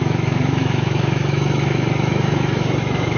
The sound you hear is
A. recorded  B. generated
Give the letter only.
B